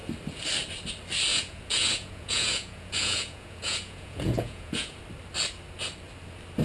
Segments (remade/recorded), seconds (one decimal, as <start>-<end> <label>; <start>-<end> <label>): 0.0-1.3 recorded; 1.3-5.0 remade; 5.0-6.6 recorded